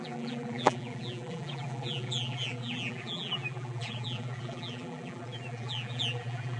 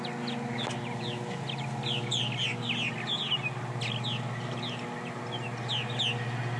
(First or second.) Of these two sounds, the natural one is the second